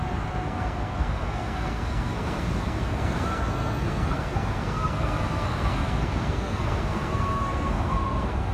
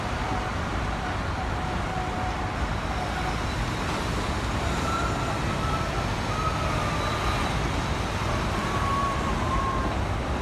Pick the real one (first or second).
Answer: second